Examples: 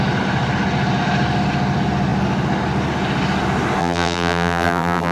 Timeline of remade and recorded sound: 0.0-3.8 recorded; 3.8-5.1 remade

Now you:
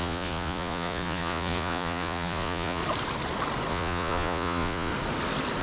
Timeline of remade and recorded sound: 0.0-2.8 remade; 2.8-3.7 recorded; 3.7-4.9 remade; 4.9-5.6 recorded